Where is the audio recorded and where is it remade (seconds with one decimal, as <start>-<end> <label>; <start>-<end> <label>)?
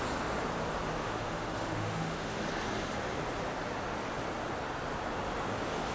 0.0-1.0 recorded; 1.0-2.4 remade; 2.4-5.9 recorded